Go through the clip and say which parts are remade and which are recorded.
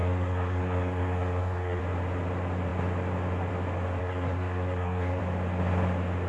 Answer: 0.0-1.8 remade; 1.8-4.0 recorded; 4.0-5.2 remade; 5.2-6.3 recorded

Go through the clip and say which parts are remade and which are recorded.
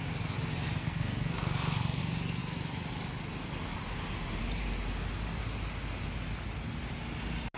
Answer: 0.0-0.8 recorded; 0.8-2.0 remade; 2.0-7.6 recorded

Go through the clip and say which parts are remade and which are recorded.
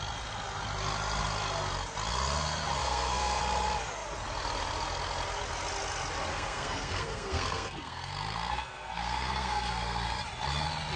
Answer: 0.0-2.8 recorded; 2.8-3.4 remade; 3.4-6.3 recorded; 6.3-10.2 remade; 10.2-11.0 recorded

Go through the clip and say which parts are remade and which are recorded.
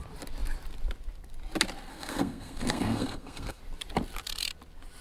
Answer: 0.0-1.9 recorded; 1.9-3.6 remade; 3.6-5.0 recorded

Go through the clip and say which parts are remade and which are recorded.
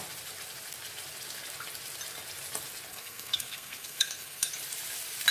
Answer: 0.0-2.9 recorded; 2.9-4.5 remade; 4.5-5.3 recorded